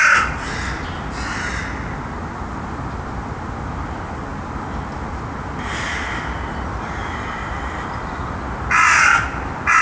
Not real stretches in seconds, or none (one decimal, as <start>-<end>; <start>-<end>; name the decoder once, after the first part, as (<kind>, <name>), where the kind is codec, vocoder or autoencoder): none